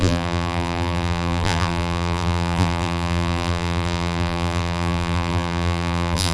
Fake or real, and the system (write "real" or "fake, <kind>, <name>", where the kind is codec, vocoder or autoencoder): fake, vocoder, BigVGAN v2